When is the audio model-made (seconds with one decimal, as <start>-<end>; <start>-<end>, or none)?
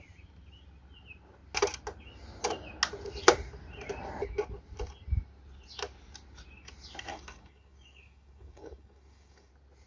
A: 7.1-9.5